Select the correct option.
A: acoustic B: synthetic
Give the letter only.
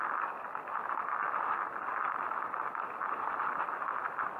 A